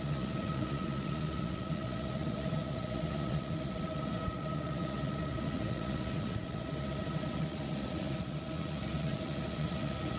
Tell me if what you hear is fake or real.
fake